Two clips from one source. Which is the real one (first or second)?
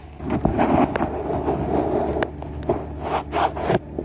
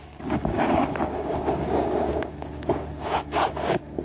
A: first